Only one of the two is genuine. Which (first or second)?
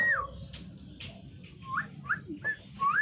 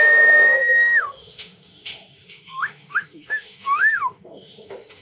first